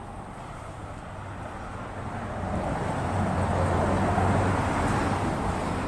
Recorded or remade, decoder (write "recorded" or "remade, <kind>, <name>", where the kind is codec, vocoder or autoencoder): recorded